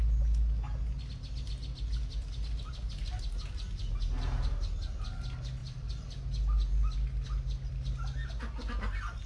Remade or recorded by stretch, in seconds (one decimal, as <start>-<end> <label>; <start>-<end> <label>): 0.0-9.3 recorded

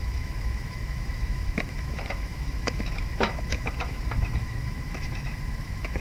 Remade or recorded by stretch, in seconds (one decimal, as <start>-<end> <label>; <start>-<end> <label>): 0.0-6.0 remade

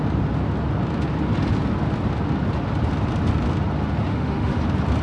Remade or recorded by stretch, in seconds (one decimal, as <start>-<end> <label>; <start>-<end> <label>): 0.0-4.1 recorded; 4.1-4.6 remade; 4.6-5.0 recorded

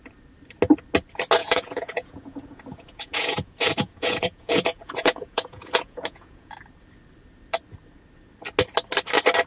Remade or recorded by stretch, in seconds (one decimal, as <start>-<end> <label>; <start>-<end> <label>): 0.0-1.4 recorded; 1.4-6.5 remade; 6.5-9.5 recorded

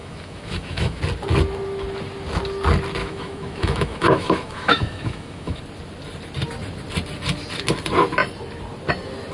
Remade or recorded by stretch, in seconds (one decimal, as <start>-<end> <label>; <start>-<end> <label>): 0.0-1.0 remade; 1.0-3.0 recorded; 3.0-5.6 remade; 5.6-9.3 recorded